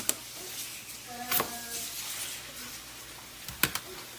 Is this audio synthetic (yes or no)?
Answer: no